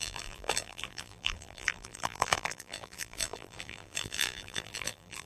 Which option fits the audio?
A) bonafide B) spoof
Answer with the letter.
B